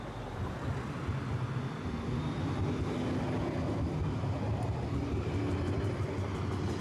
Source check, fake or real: real